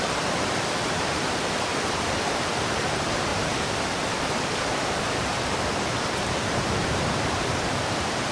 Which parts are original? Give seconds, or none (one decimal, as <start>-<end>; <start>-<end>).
none

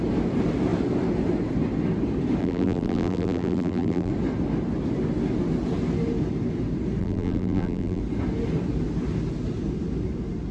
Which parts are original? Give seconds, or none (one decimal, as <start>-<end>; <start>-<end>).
0.0-2.4; 4.1-7.0; 8.0-10.5

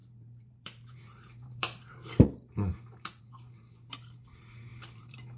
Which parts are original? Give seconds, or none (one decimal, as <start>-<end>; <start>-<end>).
none

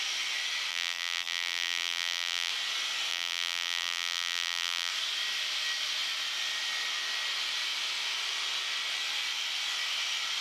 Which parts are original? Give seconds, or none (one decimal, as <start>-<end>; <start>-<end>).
0.0-0.7; 2.5-3.1; 4.9-10.4

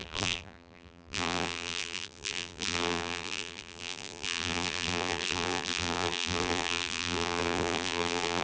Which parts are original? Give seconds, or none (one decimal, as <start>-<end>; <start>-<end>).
none